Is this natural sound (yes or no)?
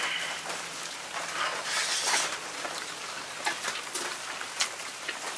yes